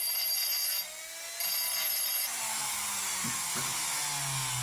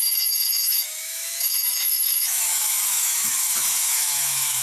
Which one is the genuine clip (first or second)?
first